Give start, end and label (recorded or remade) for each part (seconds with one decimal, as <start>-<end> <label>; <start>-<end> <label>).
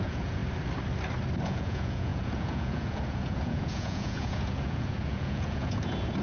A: 0.0-0.4 remade; 0.4-1.4 recorded; 1.4-6.2 remade